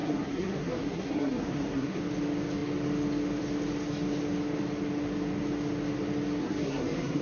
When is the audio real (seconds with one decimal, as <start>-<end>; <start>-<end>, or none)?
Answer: 2.0-6.4